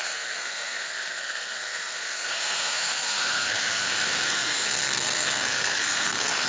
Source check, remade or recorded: remade